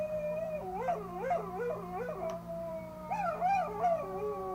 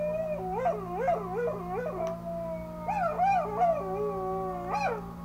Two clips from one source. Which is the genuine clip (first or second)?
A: second